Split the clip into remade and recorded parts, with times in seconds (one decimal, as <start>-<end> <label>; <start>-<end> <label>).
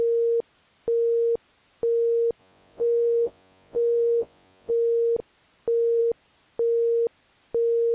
0.0-2.4 recorded; 2.4-4.7 remade; 4.7-7.9 recorded